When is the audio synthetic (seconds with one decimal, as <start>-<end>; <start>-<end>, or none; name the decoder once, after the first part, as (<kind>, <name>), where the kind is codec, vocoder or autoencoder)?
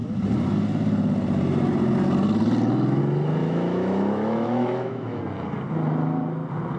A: 3.4-5.2 (autoencoder, DAC-VAE)